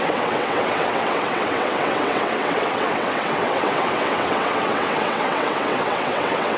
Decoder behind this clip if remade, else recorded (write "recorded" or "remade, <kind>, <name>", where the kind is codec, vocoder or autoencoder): remade, vocoder, WaveNeXt